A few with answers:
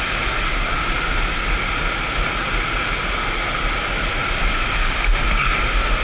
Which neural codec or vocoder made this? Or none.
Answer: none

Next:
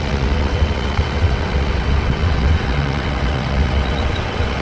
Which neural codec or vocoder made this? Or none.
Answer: vocoder, WaveNeXt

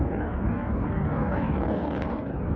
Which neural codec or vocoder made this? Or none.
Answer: codec, DAC